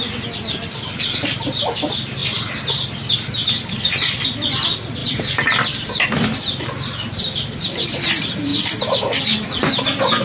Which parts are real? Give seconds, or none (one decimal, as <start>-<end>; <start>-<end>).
0.0-10.2